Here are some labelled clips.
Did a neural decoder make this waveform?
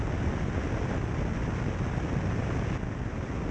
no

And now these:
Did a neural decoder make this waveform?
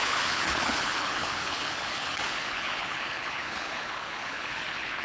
yes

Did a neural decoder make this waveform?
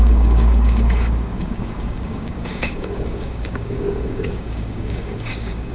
yes